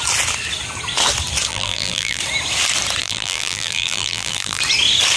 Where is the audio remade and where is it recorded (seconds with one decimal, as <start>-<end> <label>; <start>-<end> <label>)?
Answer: 0.0-1.5 recorded; 1.5-2.2 remade; 2.2-3.0 recorded; 3.0-4.6 remade; 4.6-5.2 recorded